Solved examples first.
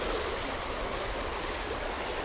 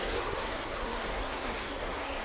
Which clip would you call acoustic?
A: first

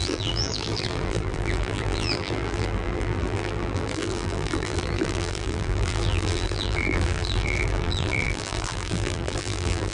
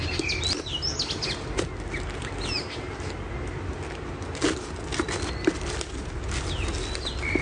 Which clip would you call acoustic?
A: second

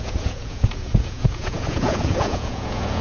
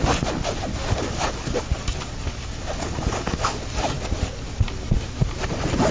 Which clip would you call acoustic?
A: second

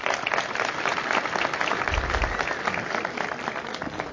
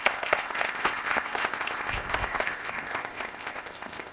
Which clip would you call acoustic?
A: first